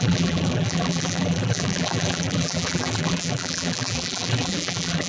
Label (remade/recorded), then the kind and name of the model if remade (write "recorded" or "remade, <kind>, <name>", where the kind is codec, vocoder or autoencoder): remade, vocoder, BigVGAN v2